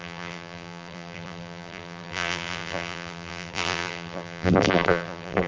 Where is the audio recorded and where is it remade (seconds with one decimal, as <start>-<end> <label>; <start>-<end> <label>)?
0.0-5.5 remade